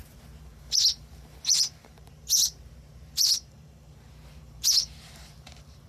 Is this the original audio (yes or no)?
no